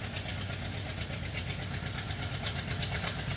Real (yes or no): yes